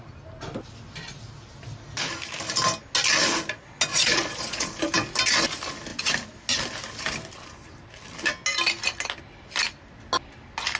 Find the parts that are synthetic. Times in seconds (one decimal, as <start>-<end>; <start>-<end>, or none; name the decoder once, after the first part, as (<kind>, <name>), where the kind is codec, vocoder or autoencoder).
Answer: 3.9-4.7 (vocoder, Vocos)